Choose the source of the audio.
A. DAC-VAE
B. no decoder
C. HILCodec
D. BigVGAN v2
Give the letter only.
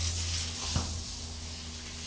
B